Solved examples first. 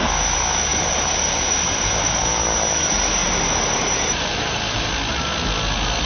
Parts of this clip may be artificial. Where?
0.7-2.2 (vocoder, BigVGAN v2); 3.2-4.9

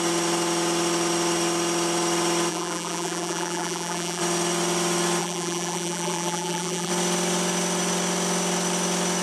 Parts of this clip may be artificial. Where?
2.5-4.2 (vocoder, BigVGAN v2); 5.2-6.9

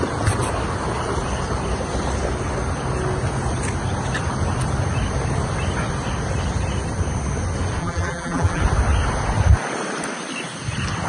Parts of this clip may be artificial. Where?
7.8-8.6 (vocoder, BigVGAN v2)

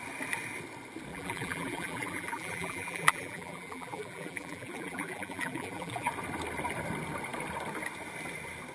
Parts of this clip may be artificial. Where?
1.1-6.1 (vocoder, BigVGAN v2)

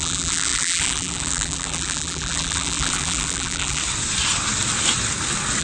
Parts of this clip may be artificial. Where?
0.0-3.8 (vocoder, BigVGAN v2)

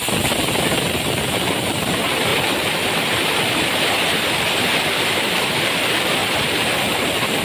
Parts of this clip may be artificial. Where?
0.0-7.4 (vocoder, BigVGAN v2)